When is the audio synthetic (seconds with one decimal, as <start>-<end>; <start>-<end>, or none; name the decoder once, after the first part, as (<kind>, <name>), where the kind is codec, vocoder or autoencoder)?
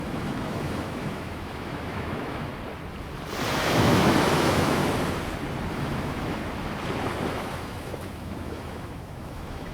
0.0-2.5 (autoencoder, DAC-VAE); 3.5-4.8; 5.7-6.4; 7.3-9.7